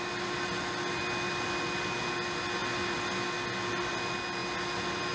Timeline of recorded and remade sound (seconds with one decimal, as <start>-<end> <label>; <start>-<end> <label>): 0.0-5.1 recorded